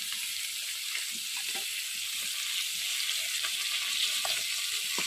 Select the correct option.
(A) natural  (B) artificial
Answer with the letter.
A